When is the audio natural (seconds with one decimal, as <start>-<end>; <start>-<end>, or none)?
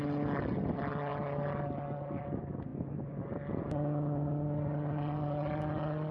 0.0-6.1